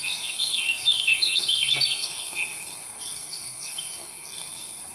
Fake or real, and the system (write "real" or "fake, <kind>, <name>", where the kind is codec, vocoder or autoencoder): fake, codec, SNAC